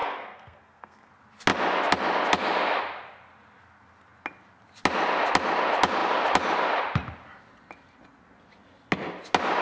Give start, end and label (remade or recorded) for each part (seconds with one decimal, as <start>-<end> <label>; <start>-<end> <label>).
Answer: 0.0-1.1 remade; 1.1-9.6 recorded